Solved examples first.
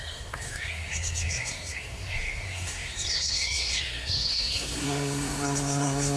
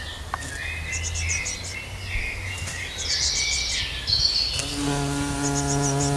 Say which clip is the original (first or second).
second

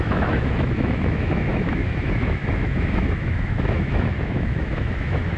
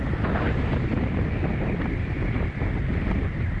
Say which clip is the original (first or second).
second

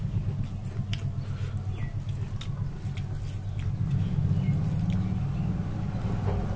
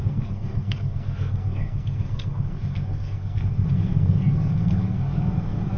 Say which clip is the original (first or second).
first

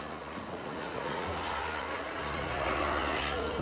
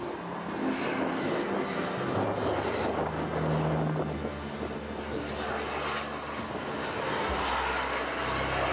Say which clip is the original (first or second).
second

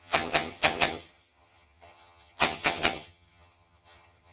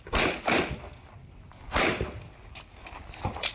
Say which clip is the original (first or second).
second